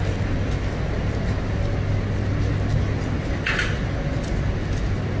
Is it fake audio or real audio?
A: real